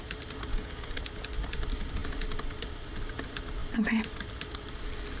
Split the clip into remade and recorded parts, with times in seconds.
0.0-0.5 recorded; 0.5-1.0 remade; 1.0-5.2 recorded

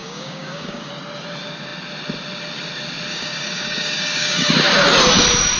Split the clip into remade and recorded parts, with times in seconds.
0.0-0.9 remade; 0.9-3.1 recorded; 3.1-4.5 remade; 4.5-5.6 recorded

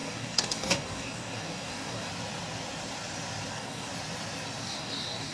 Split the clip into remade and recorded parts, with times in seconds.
0.0-2.1 remade; 2.1-3.5 recorded; 3.5-3.9 remade; 3.9-4.6 recorded; 4.6-5.3 remade